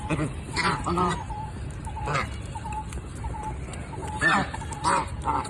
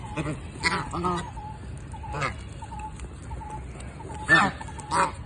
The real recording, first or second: second